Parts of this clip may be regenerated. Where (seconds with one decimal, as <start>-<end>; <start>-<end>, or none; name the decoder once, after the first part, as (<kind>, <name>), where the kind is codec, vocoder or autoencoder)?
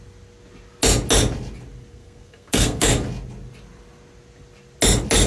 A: 1.9-2.9 (codec, SNAC)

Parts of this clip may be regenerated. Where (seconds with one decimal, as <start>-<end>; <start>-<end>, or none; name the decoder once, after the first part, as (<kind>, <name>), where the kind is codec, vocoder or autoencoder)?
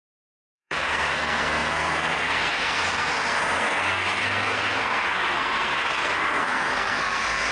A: 0.0-7.5 (codec, SNAC)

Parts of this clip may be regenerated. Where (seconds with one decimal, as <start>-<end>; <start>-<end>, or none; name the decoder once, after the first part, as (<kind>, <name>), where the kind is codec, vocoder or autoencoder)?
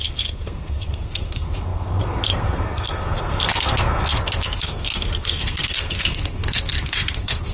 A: 0.0-7.5 (codec, SNAC)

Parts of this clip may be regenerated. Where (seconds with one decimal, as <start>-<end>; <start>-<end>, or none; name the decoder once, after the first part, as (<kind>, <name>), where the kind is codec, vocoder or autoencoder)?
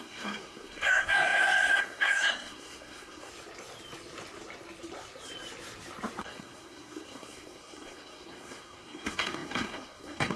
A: 0.0-3.3 (codec, SNAC); 6.2-10.4